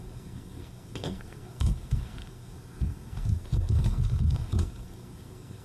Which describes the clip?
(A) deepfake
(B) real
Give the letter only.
A